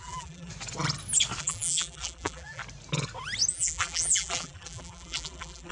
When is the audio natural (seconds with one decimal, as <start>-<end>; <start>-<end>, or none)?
0.5-1.4; 2.6-3.5